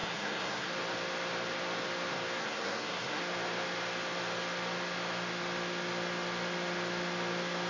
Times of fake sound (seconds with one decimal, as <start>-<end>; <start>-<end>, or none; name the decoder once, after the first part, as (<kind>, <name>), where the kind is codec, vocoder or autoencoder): 0.0-0.7 (codec, SNAC); 2.4-3.2